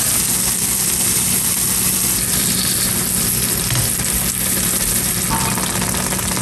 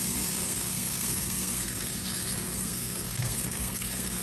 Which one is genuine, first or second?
first